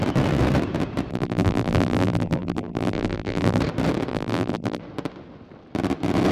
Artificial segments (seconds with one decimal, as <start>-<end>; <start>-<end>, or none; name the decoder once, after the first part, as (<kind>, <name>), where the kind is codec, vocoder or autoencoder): 1.1-3.6 (vocoder, BigVGAN v2); 4.1-4.8